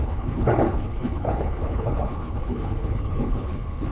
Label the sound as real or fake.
fake